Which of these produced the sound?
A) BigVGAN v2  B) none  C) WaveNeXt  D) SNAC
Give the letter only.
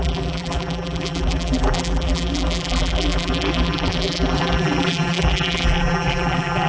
A